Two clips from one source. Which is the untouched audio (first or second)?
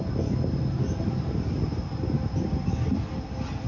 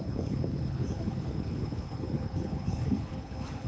first